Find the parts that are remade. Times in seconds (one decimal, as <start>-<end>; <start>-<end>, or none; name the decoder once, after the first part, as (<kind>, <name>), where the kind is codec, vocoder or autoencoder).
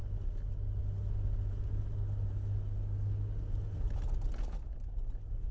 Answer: none